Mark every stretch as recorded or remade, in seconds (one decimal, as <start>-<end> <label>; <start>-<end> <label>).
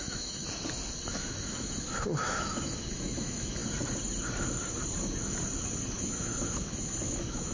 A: 0.0-0.4 remade; 0.4-1.0 recorded; 1.0-3.6 remade; 3.6-6.0 recorded; 6.0-7.5 remade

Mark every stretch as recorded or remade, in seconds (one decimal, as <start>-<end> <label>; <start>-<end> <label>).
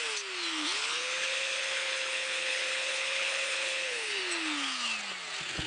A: 0.0-0.8 recorded; 0.8-4.2 remade; 4.2-5.7 recorded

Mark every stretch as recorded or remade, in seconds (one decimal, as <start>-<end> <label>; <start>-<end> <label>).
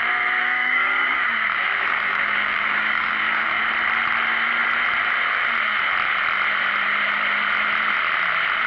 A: 0.0-0.4 recorded; 0.4-3.6 remade; 3.6-8.7 recorded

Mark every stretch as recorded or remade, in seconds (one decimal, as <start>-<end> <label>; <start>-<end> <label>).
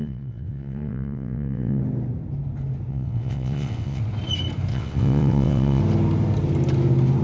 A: 0.0-1.8 remade; 1.8-2.9 recorded; 2.9-4.0 remade; 4.0-4.7 recorded; 4.7-5.8 remade; 5.8-7.2 recorded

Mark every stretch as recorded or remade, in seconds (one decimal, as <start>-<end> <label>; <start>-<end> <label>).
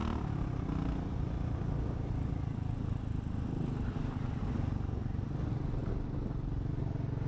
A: 0.0-7.3 recorded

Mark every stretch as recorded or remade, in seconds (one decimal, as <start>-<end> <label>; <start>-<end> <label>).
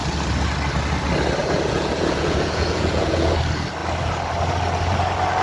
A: 0.0-1.4 recorded; 1.4-3.4 remade; 3.4-5.4 recorded